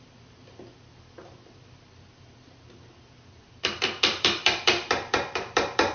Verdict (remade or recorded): remade